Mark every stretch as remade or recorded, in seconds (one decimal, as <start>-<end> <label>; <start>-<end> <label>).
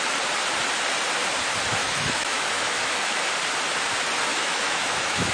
0.0-1.8 recorded; 1.8-3.2 remade; 3.2-4.3 recorded; 4.3-5.3 remade